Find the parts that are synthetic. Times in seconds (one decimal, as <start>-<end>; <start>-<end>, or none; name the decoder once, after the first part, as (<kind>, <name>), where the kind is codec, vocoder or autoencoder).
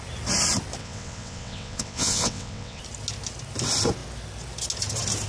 0.8-2.8 (vocoder, WaveNeXt)